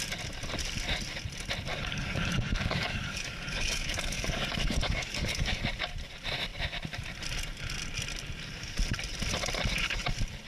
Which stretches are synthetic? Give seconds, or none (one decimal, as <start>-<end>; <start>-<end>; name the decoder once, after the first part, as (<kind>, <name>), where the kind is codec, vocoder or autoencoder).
1.7-5.6 (codec, DAC)